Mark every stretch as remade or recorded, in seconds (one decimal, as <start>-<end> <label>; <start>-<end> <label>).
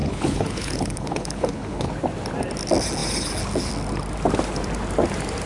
0.0-1.9 remade; 1.9-5.5 recorded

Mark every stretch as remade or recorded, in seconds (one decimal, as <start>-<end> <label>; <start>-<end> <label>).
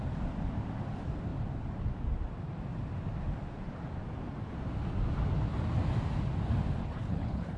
0.0-6.8 recorded; 6.8-7.6 remade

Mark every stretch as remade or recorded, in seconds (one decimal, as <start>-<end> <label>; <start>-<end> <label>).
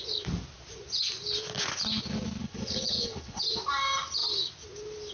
0.0-2.4 recorded; 2.4-3.4 remade; 3.4-5.1 recorded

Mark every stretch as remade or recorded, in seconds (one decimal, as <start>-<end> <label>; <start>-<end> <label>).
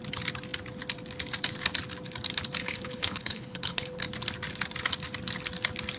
0.0-2.6 recorded; 2.6-4.0 remade; 4.0-6.0 recorded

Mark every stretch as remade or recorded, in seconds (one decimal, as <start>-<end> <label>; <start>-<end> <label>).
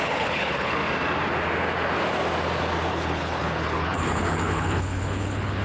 0.0-0.8 remade; 0.8-2.9 recorded; 2.9-5.6 remade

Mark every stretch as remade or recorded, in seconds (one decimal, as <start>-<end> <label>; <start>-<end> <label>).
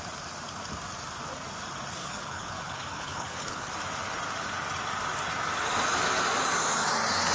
0.0-2.0 recorded; 2.0-3.7 remade; 3.7-7.3 recorded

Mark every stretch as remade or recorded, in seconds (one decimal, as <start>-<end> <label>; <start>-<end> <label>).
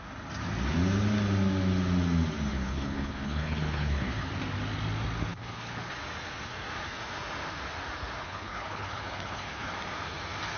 0.0-2.5 recorded; 2.5-4.3 remade; 4.3-5.3 recorded; 5.3-5.9 remade; 5.9-8.2 recorded; 8.2-9.7 remade; 9.7-10.6 recorded